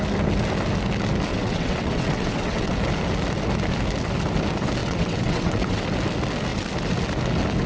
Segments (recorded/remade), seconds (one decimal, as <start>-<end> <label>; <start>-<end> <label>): 0.0-1.3 recorded; 1.3-2.7 remade; 2.7-4.8 recorded; 4.8-5.8 remade; 5.8-7.7 recorded

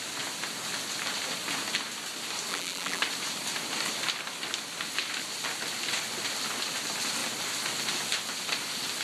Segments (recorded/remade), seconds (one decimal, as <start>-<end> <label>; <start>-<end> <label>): 0.0-2.5 recorded; 2.5-3.0 remade; 3.0-9.0 recorded